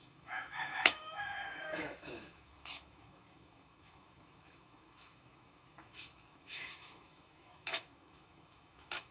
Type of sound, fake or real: fake